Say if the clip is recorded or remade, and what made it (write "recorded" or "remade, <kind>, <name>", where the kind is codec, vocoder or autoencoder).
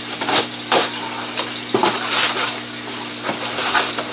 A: recorded